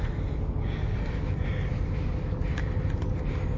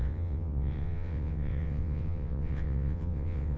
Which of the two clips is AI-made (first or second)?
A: second